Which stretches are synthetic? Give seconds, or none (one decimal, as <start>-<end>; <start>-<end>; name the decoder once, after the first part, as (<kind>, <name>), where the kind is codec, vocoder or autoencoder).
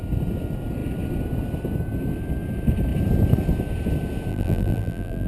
4.3-5.3 (vocoder, BigVGAN v2)